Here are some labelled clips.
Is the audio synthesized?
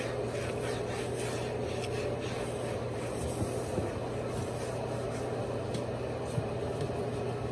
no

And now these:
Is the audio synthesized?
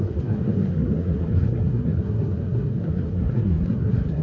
yes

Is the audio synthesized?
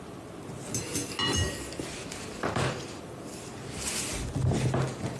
no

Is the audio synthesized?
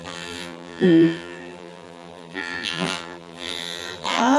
yes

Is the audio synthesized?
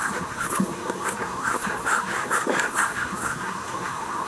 yes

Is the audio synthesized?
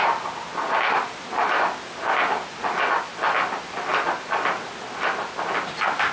no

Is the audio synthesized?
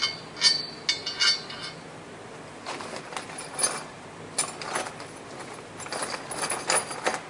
no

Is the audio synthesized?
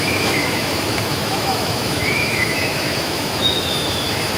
yes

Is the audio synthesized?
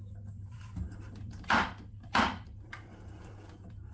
yes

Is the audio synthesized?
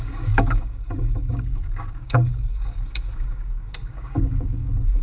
yes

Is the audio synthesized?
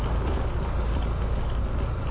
no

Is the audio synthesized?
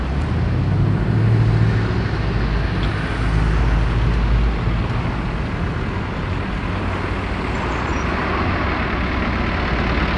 no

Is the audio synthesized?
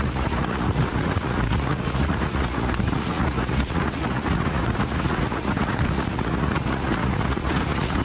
yes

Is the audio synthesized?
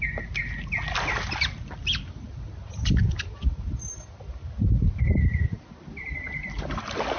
no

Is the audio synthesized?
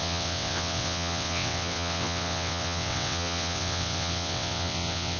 yes